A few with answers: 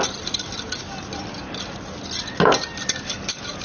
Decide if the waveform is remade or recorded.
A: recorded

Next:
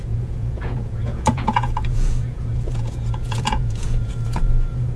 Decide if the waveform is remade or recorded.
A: remade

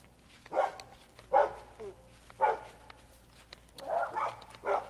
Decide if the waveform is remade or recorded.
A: recorded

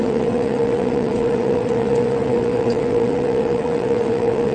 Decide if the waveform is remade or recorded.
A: remade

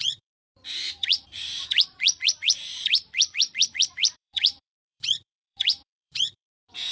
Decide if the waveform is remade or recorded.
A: remade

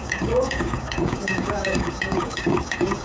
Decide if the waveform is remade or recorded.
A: remade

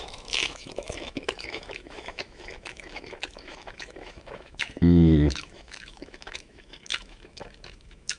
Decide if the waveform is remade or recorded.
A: remade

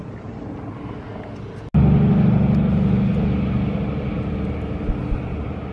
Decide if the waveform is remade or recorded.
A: recorded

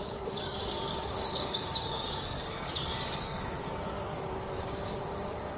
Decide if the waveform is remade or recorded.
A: remade